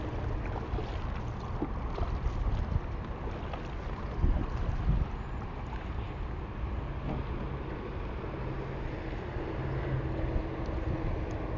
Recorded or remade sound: recorded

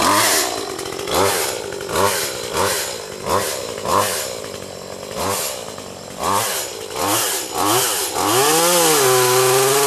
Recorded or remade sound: recorded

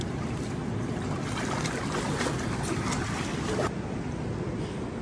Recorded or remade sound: recorded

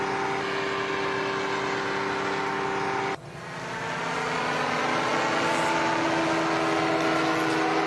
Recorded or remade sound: recorded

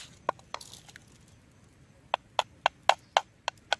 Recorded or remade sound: recorded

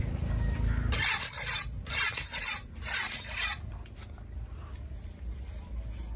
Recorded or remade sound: recorded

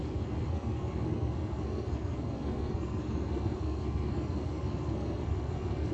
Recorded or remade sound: remade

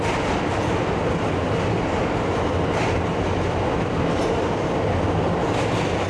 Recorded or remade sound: recorded